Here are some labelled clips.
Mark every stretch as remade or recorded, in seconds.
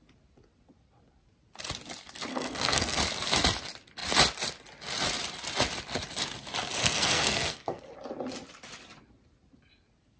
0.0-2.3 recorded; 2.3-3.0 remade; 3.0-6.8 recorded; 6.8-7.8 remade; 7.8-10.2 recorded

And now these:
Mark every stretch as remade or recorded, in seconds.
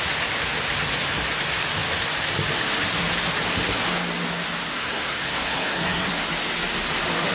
0.0-4.8 recorded; 4.8-6.1 remade; 6.1-7.3 recorded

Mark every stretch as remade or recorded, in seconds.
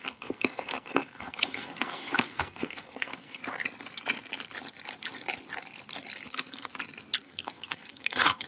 0.0-3.4 remade; 3.4-6.3 recorded; 6.3-6.7 remade; 6.7-7.2 recorded; 7.2-8.5 remade